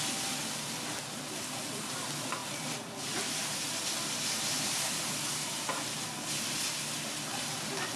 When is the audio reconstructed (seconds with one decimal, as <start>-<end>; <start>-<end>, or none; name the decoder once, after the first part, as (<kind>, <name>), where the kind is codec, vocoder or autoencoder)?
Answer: 2.4-5.6 (vocoder, BigVGAN v2)